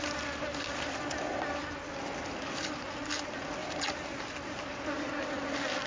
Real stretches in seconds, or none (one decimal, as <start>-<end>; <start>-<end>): 0.0-5.9